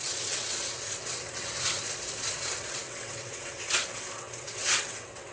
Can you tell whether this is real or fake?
fake